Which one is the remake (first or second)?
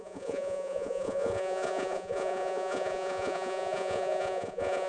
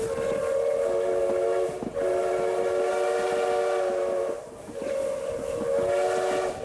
first